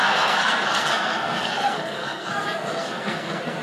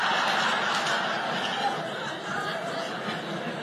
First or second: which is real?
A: second